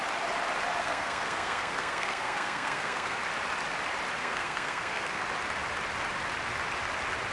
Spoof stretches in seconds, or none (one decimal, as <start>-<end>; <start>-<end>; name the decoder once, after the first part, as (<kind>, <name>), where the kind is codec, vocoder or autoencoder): 0.8-3.2 (codec, SNAC); 4.2-5.2